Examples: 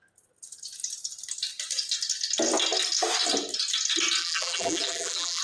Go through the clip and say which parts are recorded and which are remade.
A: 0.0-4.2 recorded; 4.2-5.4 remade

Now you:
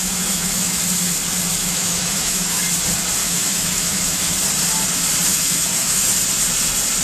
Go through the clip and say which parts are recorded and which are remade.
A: 0.0-0.8 remade; 0.8-1.6 recorded; 1.6-2.6 remade; 2.6-3.2 recorded; 3.2-4.2 remade; 4.2-5.3 recorded; 5.3-6.1 remade; 6.1-7.0 recorded

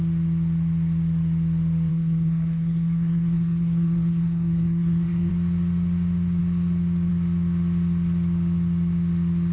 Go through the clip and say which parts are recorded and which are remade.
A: 0.0-1.9 recorded; 1.9-5.3 remade; 5.3-9.5 recorded

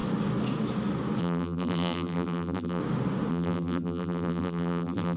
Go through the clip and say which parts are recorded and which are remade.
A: 0.0-1.2 recorded; 1.2-2.8 remade; 2.8-3.3 recorded; 3.3-5.2 remade

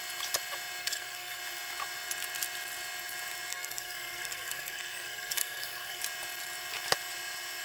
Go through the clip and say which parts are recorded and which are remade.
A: 0.0-0.8 recorded; 0.8-1.4 remade; 1.4-3.5 recorded; 3.5-6.0 remade; 6.0-7.6 recorded

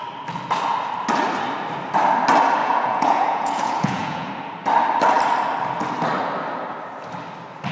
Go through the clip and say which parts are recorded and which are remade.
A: 0.0-2.6 recorded; 2.6-4.3 remade; 4.3-7.7 recorded